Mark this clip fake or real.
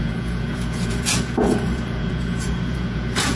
fake